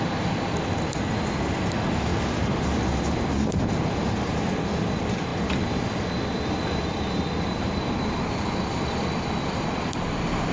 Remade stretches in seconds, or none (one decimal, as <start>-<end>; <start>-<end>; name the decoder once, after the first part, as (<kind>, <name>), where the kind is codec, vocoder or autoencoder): 5.3-10.5 (vocoder, BigVGAN v2)